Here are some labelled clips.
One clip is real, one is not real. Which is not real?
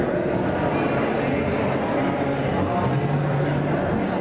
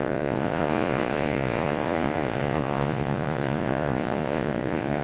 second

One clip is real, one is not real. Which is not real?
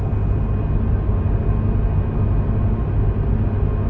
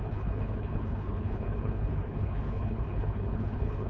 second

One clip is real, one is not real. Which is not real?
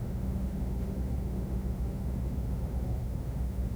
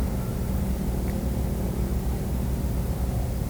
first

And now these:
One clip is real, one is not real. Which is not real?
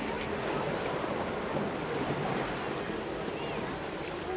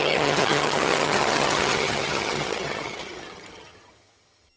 second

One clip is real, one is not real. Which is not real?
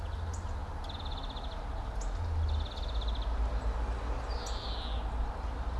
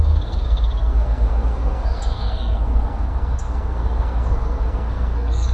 second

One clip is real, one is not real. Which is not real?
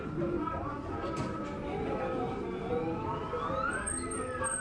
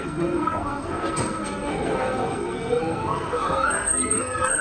second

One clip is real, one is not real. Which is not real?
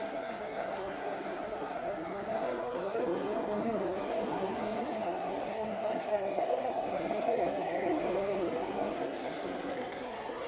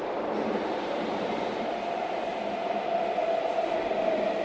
first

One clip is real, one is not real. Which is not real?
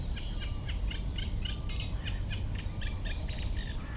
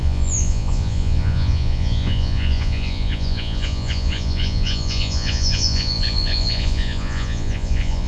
second